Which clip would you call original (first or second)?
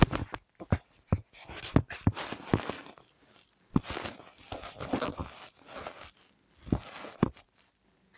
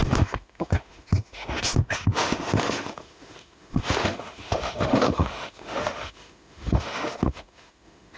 first